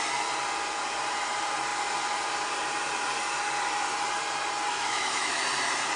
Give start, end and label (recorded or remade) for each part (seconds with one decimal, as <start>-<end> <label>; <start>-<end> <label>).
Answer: 0.0-4.7 recorded; 4.7-5.4 remade; 5.4-6.0 recorded